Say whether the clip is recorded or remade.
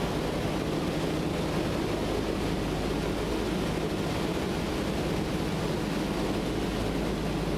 recorded